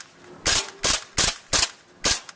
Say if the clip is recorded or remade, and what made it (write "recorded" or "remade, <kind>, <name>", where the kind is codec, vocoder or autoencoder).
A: recorded